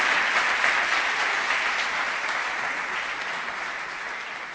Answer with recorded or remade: recorded